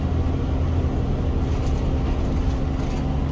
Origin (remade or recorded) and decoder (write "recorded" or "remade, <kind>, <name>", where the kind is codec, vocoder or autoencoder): recorded